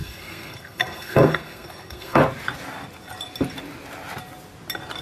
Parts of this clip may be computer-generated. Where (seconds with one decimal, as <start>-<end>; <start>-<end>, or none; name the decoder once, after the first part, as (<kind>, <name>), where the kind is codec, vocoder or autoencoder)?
0.0-2.2 (codec, SNAC)